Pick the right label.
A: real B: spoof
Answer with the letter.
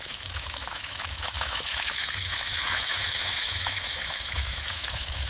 B